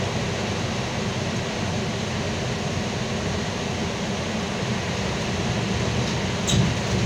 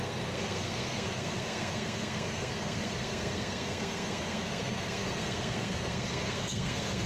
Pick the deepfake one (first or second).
second